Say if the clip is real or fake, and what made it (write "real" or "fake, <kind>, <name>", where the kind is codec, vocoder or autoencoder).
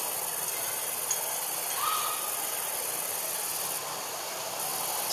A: real